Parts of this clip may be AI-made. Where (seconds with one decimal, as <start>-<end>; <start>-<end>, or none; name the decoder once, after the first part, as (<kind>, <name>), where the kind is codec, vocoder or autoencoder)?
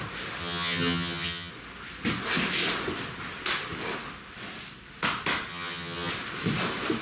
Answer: 0.4-1.5 (vocoder, HiFi-GAN); 5.5-6.1